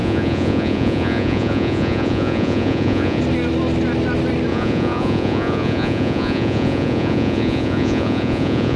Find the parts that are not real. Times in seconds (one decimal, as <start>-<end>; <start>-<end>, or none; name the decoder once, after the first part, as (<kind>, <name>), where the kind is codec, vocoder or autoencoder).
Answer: 0.0-3.2 (vocoder, Vocos); 4.5-8.8